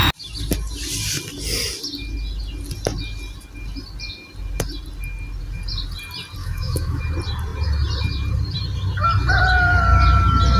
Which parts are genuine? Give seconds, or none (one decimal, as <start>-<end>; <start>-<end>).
0.0-6.4; 7.0-10.6